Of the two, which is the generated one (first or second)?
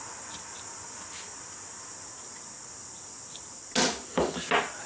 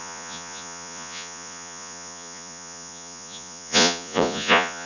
second